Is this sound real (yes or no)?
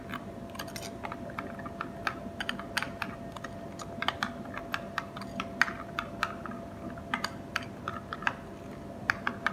yes